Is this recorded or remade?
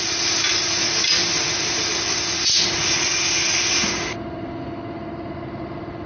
recorded